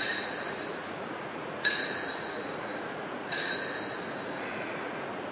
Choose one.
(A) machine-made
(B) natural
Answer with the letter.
A